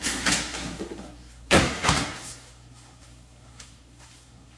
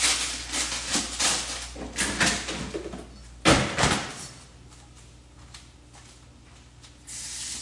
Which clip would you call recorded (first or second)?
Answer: second